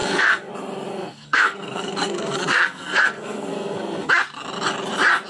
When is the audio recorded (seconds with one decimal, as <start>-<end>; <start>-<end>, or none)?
0.5-0.9; 4.1-5.3